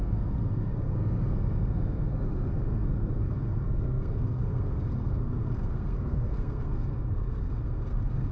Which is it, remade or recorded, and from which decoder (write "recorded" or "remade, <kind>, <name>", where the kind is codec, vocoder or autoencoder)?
remade, codec, SNAC